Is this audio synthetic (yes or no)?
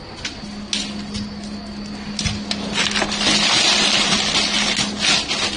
no